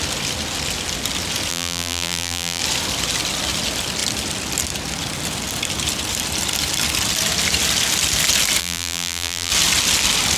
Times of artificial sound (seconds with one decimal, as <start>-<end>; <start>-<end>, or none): 1.5-2.6; 8.6-9.5